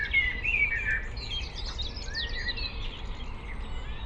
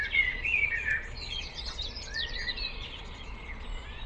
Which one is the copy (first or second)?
second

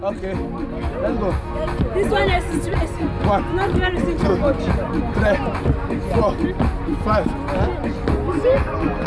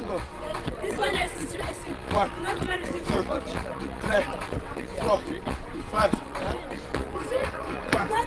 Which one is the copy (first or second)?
second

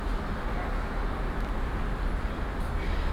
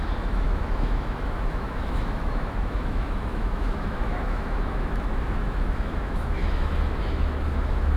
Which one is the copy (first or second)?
second